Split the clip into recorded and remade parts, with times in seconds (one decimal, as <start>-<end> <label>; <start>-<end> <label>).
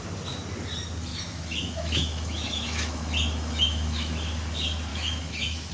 0.0-1.1 recorded; 1.1-4.1 remade; 4.1-4.9 recorded; 4.9-5.7 remade